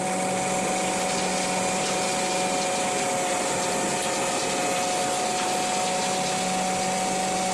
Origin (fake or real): real